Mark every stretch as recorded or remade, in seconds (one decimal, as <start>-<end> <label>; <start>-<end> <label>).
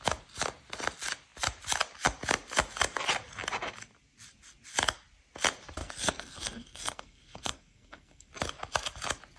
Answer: 0.0-5.8 recorded; 5.8-8.3 remade; 8.3-9.4 recorded